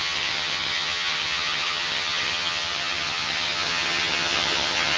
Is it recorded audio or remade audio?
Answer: remade